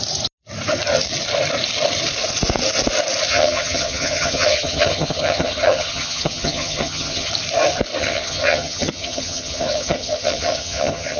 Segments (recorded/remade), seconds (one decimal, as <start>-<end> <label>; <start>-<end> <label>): 0.0-3.3 recorded; 3.3-7.3 remade; 7.3-8.0 recorded; 8.0-11.2 remade